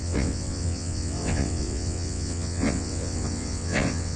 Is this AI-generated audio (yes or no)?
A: yes